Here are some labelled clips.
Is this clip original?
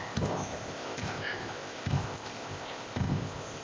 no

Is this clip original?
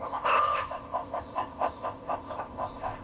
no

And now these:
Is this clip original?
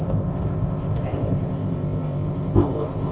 no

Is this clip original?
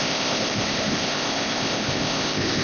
no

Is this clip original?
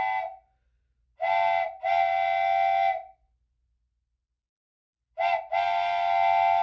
yes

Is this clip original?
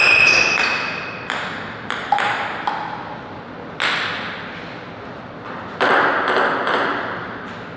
yes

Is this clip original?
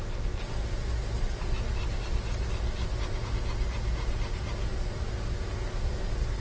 yes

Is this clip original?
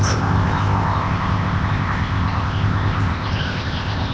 no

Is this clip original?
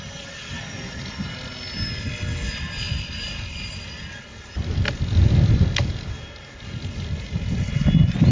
yes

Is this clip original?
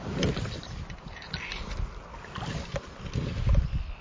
yes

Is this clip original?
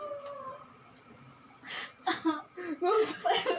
yes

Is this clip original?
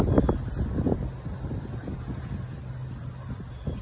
yes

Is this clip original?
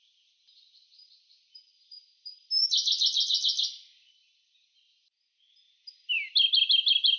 yes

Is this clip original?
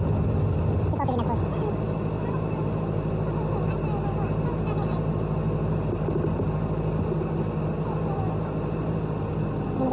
yes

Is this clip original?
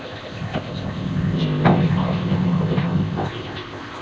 no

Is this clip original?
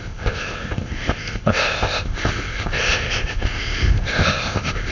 no